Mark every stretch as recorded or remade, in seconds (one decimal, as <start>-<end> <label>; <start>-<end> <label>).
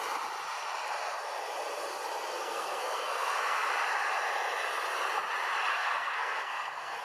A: 0.0-2.3 recorded; 2.3-3.7 remade; 3.7-5.7 recorded; 5.7-7.0 remade